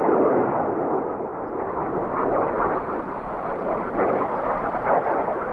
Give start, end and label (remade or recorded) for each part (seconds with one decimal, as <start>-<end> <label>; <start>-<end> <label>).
0.0-5.5 recorded